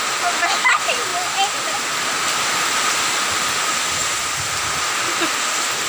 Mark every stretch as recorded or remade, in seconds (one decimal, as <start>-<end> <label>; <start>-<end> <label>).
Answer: 0.0-5.9 recorded